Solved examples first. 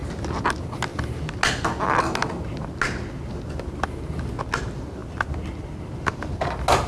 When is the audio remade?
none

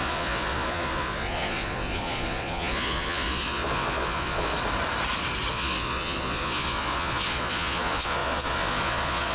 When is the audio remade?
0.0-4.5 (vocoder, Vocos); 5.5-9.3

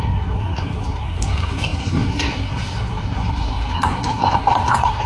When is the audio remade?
0.0-5.1 (codec, SNAC)

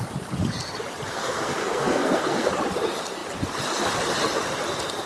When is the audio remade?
1.1-2.5 (codec, SNAC)

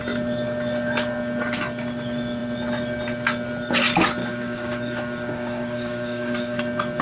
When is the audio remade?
4.2-6.6 (codec, DAC)

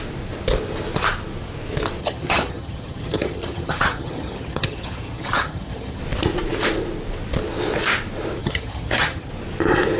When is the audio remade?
2.0-6.0 (vocoder, HiFi-GAN); 8.4-9.3

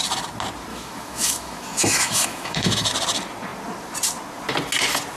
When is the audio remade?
0.7-2.9 (autoencoder, DAC-VAE)

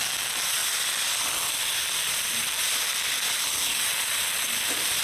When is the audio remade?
0.6-3.6 (vocoder, BigVGAN v2)